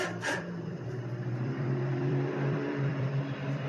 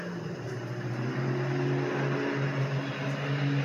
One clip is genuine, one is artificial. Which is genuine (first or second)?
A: second